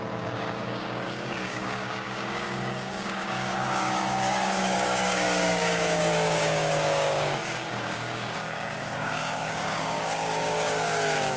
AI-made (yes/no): yes